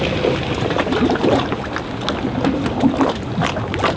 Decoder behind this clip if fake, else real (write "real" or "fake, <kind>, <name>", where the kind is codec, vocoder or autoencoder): real